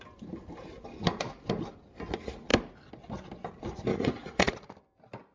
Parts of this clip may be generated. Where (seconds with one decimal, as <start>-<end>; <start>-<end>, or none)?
3.9-4.7

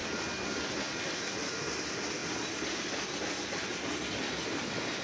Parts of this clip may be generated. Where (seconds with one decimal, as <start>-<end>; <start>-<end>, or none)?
none

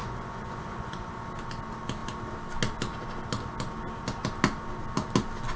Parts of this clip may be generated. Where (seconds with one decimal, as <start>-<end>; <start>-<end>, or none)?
0.0-1.2

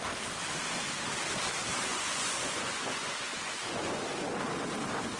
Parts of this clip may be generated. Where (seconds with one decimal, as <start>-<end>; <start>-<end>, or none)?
1.9-4.0

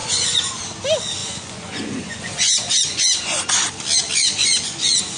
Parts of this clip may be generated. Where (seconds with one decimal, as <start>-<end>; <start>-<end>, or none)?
0.0-0.6; 1.2-3.4; 4.4-5.2

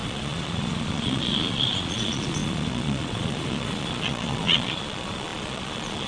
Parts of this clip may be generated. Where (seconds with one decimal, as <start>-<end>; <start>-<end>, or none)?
0.0-6.1

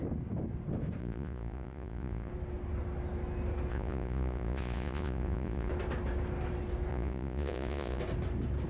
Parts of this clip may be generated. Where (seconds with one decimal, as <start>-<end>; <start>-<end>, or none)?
1.0-2.3; 3.7-5.7; 6.9-8.0

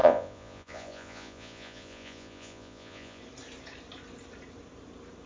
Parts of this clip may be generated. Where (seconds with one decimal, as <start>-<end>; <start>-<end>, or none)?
0.0-3.2